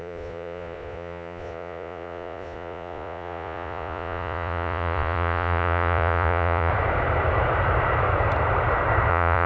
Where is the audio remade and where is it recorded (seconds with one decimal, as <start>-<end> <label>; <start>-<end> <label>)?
0.0-6.7 remade; 6.7-9.1 recorded; 9.1-9.5 remade